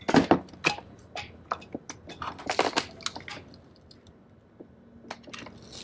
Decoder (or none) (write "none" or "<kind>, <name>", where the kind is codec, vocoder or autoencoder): none